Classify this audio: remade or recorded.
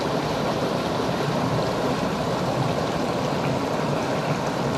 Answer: recorded